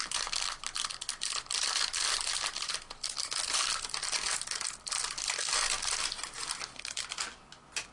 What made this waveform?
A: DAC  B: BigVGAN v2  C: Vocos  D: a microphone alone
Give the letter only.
D